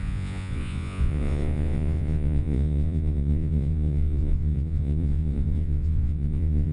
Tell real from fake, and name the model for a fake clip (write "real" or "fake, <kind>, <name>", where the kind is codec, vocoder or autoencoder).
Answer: fake, vocoder, Vocos